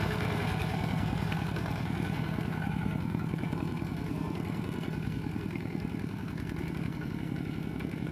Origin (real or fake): fake